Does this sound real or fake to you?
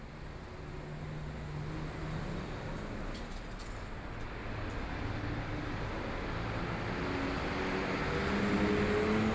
real